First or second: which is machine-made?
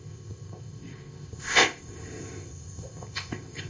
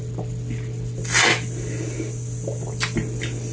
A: first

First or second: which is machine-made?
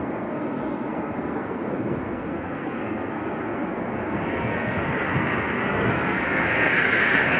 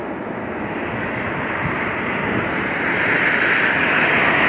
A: first